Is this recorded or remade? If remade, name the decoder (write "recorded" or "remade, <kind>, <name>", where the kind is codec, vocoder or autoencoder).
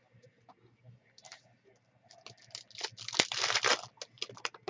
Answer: recorded